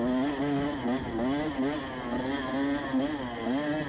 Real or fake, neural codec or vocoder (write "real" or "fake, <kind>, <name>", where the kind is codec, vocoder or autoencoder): real